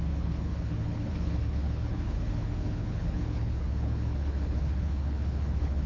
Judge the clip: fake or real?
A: fake